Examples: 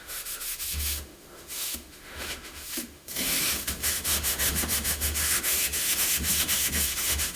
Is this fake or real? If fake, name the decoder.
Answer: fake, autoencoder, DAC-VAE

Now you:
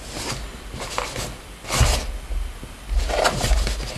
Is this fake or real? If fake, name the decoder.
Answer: real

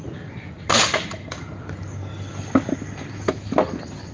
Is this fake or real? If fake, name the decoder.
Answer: real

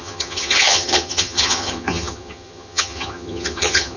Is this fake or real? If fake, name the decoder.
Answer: fake, vocoder, HiFi-GAN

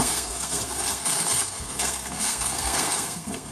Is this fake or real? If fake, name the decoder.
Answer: fake, codec, SNAC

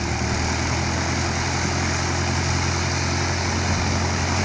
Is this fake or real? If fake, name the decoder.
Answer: real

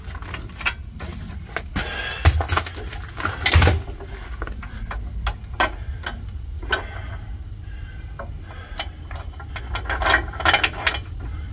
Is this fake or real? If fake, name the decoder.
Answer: real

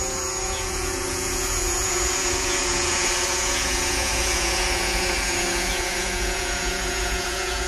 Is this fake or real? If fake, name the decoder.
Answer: fake, vocoder, Vocos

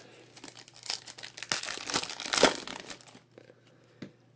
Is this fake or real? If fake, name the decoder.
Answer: real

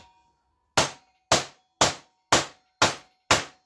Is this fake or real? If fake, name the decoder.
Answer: real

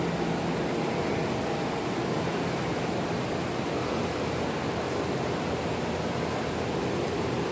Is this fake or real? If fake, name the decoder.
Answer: real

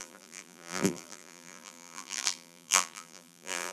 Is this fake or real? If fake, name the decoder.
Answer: fake, vocoder, BigVGAN v2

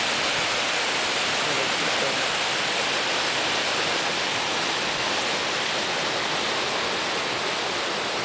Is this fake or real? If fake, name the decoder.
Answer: real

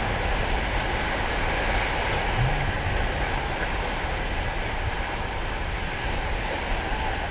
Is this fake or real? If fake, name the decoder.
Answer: real